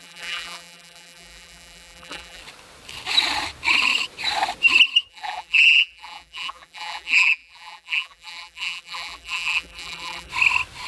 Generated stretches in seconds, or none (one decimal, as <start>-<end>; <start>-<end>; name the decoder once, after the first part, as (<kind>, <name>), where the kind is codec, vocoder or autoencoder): 0.0-2.4 (vocoder, BigVGAN v2); 5.1-10.3